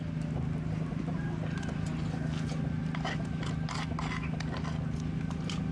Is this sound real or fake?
real